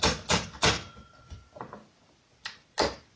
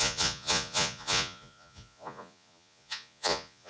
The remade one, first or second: second